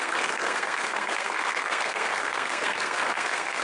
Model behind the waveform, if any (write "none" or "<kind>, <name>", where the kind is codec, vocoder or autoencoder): codec, SNAC